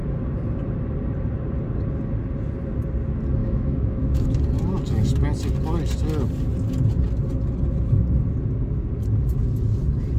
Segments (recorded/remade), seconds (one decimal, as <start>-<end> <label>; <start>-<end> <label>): 0.0-3.4 recorded; 3.4-4.4 remade; 4.4-10.2 recorded